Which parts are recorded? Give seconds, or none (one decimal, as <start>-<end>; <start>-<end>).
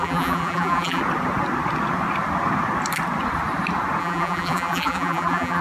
1.0-4.0